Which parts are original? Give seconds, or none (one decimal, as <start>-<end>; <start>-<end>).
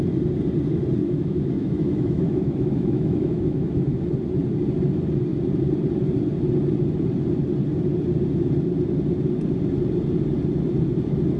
0.0-1.0; 4.0-11.4